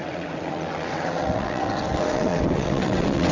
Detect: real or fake fake